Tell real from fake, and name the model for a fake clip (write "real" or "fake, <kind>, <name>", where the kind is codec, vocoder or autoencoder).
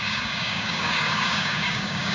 fake, codec, DAC